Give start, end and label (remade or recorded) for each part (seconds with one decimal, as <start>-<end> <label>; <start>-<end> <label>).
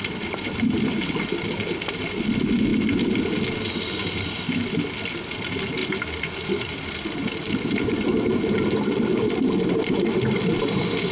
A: 0.0-11.1 recorded